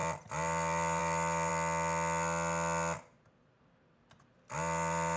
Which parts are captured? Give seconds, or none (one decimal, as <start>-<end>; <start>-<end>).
1.5-3.6